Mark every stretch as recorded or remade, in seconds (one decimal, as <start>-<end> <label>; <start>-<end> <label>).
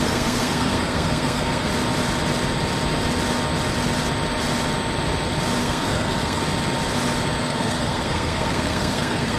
0.0-1.7 remade; 1.7-5.6 recorded; 5.6-6.4 remade; 6.4-7.4 recorded; 7.4-9.4 remade